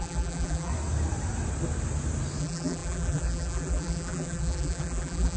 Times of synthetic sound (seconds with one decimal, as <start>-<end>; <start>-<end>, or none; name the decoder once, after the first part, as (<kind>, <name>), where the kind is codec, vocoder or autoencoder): 0.0-0.7 (vocoder, BigVGAN v2); 2.4-5.4